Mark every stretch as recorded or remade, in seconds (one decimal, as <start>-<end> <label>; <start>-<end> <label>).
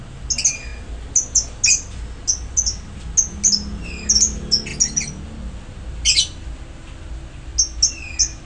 0.0-8.4 recorded